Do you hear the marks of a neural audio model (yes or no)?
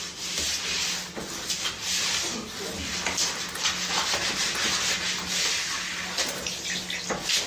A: no